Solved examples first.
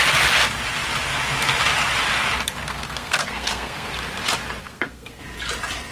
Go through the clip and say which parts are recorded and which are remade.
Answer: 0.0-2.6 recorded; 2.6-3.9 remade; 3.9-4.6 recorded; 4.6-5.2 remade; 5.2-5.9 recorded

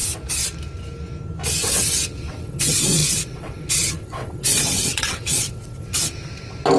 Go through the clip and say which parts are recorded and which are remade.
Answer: 0.0-1.6 recorded; 1.6-5.9 remade; 5.9-6.8 recorded